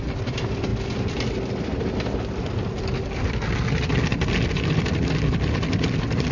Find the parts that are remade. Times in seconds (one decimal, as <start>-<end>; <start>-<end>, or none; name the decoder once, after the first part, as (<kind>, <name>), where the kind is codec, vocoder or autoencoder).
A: none